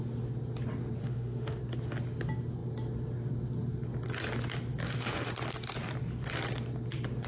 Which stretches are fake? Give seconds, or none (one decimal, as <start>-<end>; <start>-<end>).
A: 1.0-1.6; 4.8-5.3